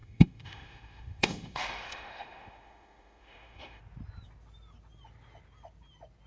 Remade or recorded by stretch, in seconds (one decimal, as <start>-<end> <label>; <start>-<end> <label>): 0.0-3.8 remade; 3.8-6.3 recorded